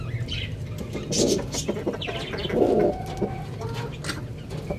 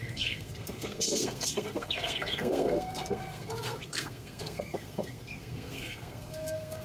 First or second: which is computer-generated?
second